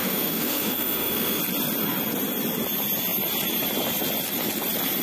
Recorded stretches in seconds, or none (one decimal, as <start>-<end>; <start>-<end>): 1.4-5.0